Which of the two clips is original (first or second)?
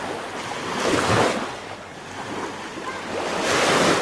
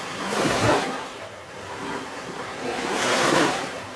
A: first